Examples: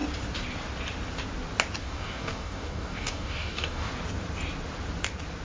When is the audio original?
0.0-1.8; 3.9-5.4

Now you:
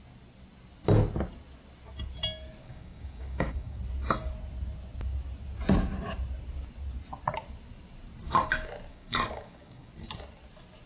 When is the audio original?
0.0-2.6; 3.8-8.9; 9.9-10.9